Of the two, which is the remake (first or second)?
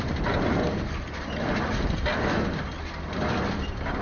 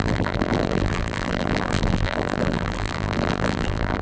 second